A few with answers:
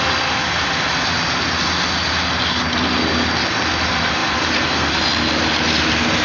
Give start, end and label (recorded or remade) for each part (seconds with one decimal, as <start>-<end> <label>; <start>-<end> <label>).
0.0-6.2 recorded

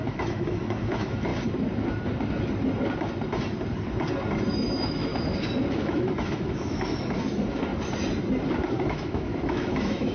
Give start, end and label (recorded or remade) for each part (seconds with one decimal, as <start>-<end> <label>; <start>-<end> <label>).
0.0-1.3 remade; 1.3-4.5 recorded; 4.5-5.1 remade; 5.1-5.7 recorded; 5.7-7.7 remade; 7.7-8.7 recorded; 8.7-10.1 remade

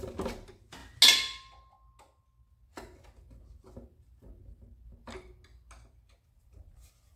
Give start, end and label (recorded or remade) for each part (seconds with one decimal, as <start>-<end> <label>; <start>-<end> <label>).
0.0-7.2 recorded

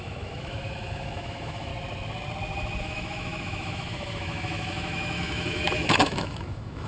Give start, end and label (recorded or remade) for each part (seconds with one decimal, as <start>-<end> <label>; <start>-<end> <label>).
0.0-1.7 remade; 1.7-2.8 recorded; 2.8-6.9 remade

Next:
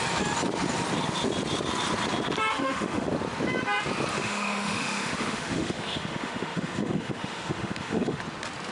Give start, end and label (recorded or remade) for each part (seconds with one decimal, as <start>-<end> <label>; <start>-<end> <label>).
0.0-2.5 recorded; 2.5-3.1 remade; 3.1-4.1 recorded; 4.1-8.2 remade; 8.2-8.7 recorded

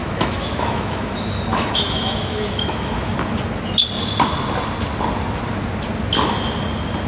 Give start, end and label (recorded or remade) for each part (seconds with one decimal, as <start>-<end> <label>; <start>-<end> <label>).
0.0-3.1 remade; 3.1-7.1 recorded

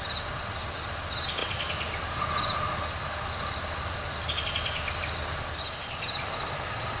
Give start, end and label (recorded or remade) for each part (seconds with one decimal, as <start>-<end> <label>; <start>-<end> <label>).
0.0-7.0 recorded